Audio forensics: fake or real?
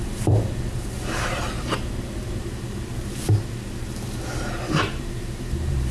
fake